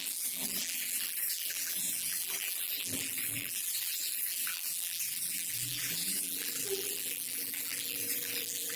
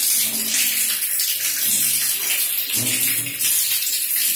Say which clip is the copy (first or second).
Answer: first